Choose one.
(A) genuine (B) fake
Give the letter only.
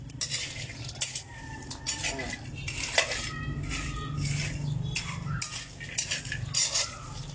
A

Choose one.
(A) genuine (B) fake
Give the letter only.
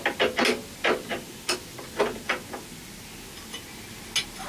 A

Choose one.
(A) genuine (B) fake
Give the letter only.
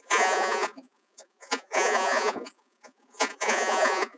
B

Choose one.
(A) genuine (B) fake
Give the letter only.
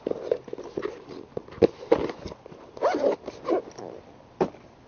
A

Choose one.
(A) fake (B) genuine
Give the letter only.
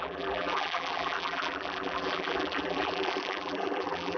A